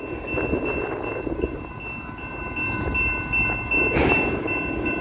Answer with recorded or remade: recorded